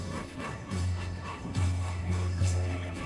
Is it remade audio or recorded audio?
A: remade